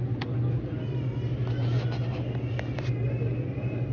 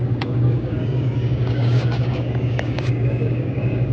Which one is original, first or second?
first